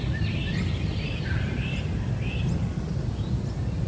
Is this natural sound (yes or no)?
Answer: yes